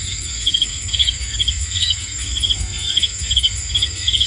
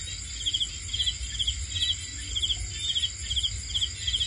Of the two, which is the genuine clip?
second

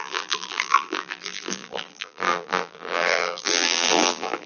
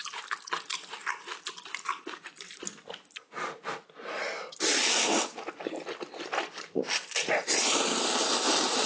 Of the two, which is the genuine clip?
second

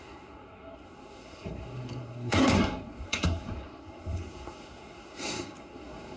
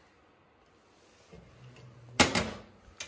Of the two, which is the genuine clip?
second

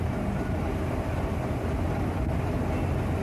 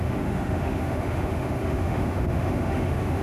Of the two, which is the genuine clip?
first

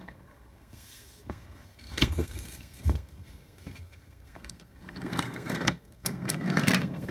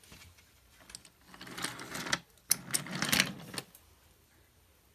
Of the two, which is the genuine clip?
second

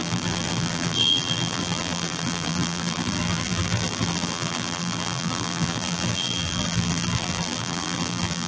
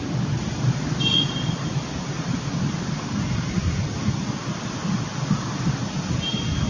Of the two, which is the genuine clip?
second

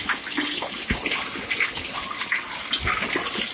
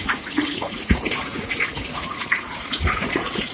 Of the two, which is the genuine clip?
first